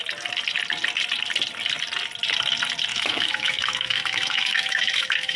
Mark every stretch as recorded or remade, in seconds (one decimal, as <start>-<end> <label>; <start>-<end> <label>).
0.0-2.9 recorded; 2.9-5.4 remade